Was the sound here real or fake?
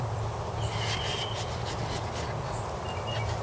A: real